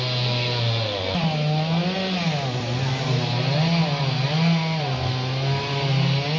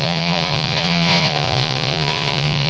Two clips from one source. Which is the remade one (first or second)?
second